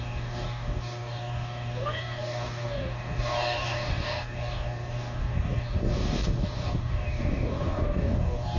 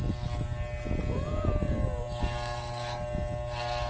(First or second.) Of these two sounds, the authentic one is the second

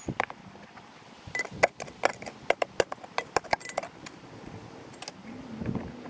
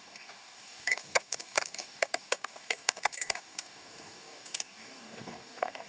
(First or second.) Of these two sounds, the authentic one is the first